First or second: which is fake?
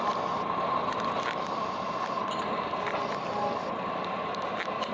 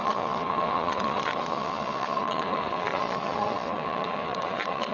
second